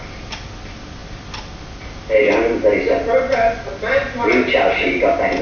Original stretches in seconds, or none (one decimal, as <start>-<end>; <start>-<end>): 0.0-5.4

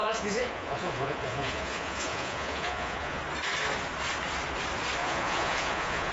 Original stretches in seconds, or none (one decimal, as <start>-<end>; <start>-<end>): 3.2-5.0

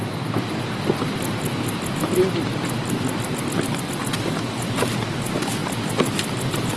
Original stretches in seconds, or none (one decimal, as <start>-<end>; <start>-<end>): 0.0-6.8